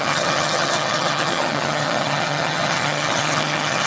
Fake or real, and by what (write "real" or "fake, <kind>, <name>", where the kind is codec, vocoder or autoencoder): fake, vocoder, HiFi-GAN